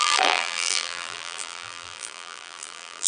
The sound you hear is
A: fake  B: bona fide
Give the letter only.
A